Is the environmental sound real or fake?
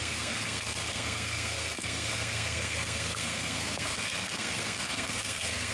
fake